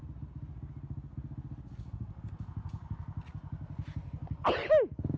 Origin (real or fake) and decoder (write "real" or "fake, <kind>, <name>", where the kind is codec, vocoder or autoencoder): real